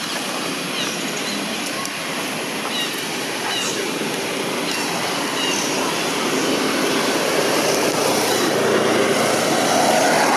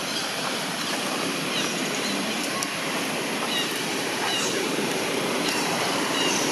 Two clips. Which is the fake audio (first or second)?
second